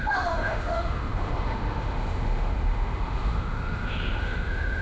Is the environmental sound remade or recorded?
remade